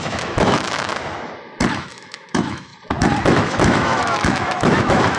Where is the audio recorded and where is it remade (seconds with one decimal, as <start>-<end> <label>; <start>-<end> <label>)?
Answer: 0.0-0.9 remade; 0.9-1.7 recorded; 1.7-2.7 remade; 2.7-3.3 recorded; 3.3-5.2 remade